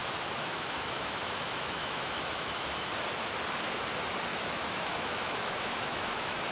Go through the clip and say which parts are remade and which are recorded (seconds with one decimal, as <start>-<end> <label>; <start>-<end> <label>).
0.0-2.9 remade; 2.9-4.3 recorded; 4.3-6.5 remade

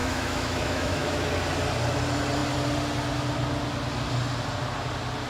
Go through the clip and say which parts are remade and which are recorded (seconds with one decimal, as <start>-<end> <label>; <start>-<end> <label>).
0.0-1.3 remade; 1.3-5.3 recorded

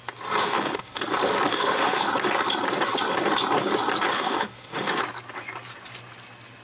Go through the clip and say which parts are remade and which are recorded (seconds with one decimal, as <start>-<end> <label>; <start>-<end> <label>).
0.0-0.4 recorded; 0.4-1.0 remade; 1.0-1.5 recorded; 1.5-2.1 remade; 2.1-4.1 recorded; 4.1-5.0 remade; 5.0-6.6 recorded

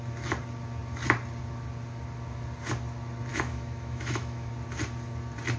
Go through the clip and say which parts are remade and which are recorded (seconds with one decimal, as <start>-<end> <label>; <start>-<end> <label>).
0.0-3.3 recorded; 3.3-4.5 remade; 4.5-5.6 recorded

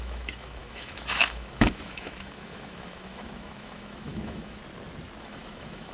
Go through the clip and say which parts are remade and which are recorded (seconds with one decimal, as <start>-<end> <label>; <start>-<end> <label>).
0.0-4.6 remade; 4.6-5.2 recorded; 5.2-5.9 remade